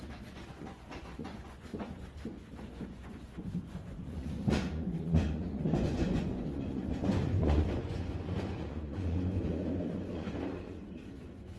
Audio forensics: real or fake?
fake